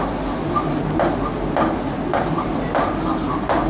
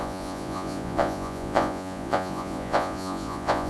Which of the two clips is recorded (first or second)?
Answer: first